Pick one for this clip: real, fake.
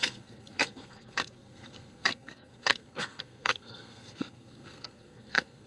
fake